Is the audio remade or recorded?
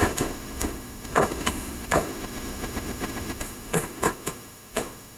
remade